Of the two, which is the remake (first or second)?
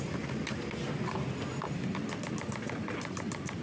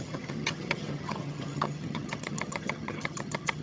second